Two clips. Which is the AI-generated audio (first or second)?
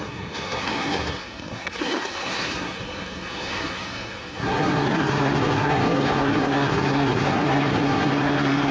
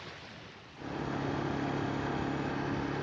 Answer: first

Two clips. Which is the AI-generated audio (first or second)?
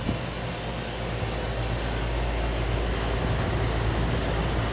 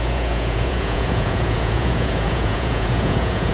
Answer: second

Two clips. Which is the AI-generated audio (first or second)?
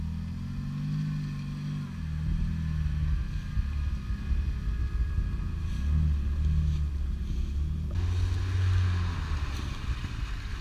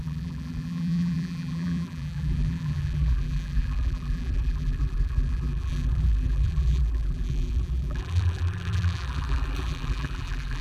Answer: second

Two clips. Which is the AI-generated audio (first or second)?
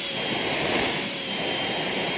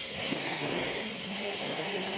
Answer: second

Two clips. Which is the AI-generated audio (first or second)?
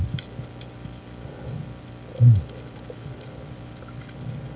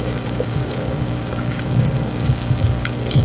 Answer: second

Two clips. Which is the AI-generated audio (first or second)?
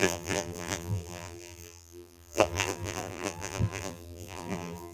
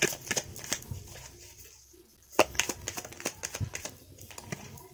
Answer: first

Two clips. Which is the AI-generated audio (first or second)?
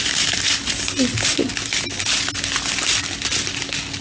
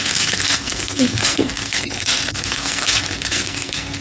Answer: second